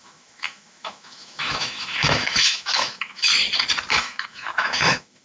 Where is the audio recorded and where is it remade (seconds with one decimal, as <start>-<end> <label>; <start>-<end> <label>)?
0.0-3.3 remade; 3.3-3.9 recorded; 3.9-5.2 remade